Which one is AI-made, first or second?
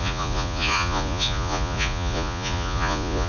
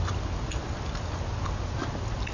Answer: first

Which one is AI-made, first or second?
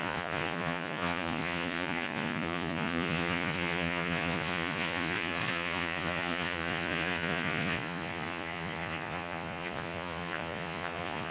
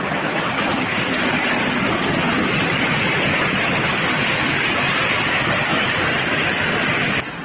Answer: first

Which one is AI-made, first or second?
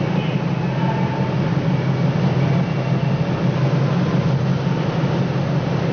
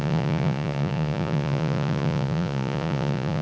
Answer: second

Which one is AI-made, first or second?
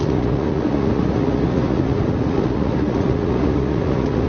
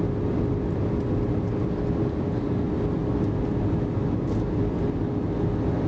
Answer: first